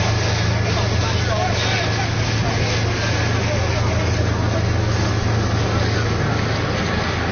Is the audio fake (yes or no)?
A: no